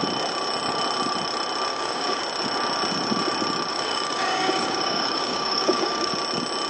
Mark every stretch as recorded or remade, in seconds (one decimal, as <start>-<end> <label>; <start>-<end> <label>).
0.0-1.7 recorded; 1.7-2.2 remade; 2.2-3.7 recorded; 3.7-6.1 remade; 6.1-6.7 recorded